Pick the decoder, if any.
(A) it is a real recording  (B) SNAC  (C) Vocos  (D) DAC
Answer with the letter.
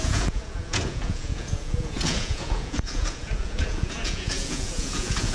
C